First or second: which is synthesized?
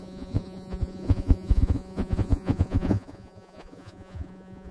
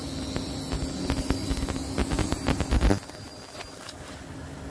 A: first